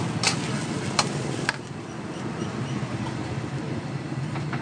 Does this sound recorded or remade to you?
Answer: recorded